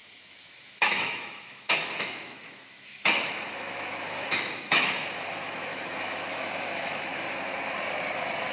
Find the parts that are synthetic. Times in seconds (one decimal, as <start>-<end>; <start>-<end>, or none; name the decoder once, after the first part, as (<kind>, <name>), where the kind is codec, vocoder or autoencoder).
0.0-7.1 (autoencoder, DAC-VAE)